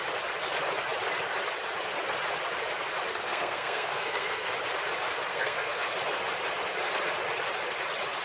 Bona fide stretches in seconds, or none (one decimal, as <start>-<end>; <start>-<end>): 0.0-3.1; 4.5-5.3; 6.0-8.2